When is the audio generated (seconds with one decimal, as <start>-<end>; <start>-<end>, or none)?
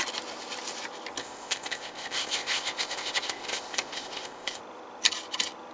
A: 1.2-4.6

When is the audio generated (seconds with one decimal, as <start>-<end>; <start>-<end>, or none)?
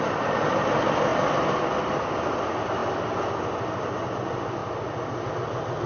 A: none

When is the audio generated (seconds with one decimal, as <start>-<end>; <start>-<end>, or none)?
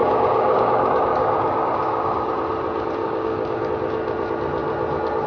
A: 0.0-2.3; 3.0-3.7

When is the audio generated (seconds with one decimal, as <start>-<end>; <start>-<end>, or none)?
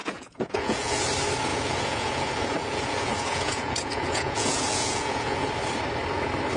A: 0.0-1.0; 1.5-5.5